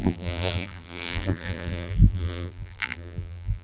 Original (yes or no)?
no